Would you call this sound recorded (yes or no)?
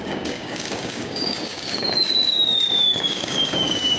no